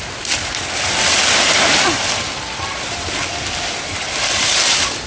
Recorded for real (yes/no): yes